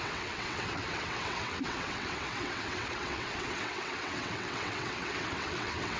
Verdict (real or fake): fake